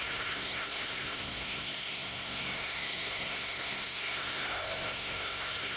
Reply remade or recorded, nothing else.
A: remade